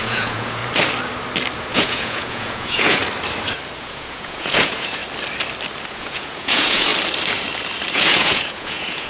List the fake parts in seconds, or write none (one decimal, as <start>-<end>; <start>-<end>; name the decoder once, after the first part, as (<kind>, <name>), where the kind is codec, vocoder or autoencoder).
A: 0.0-0.6 (vocoder, Vocos); 1.7-3.0; 3.8-5.0; 5.9-6.9; 7.9-9.1